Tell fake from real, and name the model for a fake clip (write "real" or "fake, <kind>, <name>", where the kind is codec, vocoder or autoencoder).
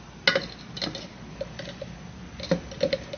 real